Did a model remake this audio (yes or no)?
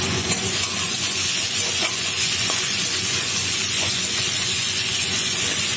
yes